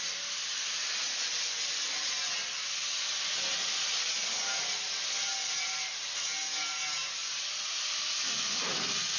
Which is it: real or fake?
real